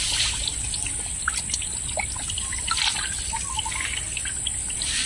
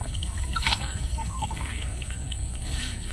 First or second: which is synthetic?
second